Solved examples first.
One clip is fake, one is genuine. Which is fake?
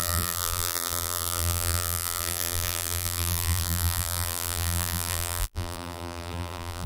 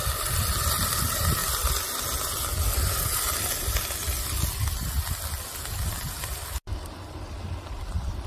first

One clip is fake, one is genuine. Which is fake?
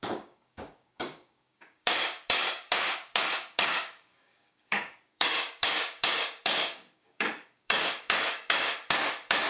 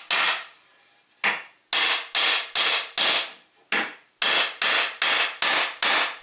first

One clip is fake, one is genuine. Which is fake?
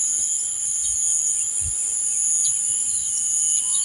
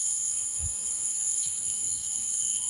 second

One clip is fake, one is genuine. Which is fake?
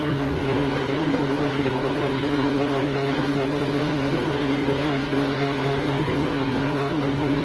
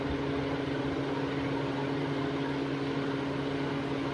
first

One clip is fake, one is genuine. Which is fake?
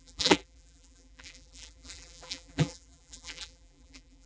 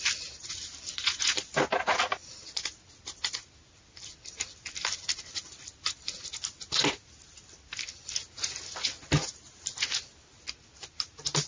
first